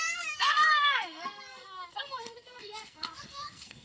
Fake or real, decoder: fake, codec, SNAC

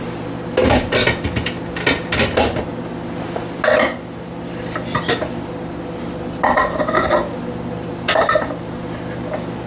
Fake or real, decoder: real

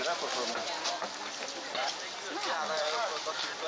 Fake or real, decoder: real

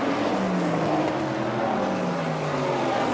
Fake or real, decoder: real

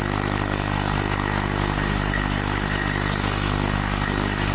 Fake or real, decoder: fake, codec, SNAC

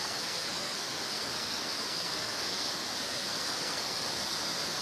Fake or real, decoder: fake, codec, SNAC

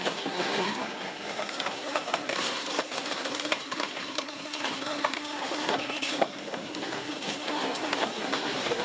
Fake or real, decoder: fake, codec, SNAC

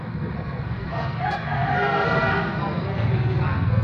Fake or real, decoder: fake, codec, SNAC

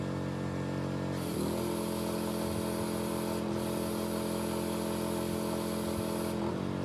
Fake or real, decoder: real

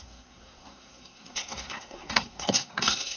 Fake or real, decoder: fake, codec, SNAC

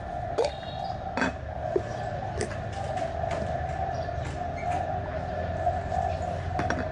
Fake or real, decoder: real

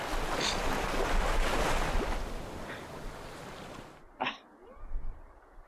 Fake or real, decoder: real